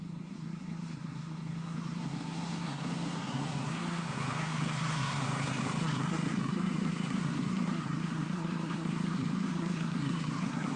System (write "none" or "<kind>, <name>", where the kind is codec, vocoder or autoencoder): codec, SNAC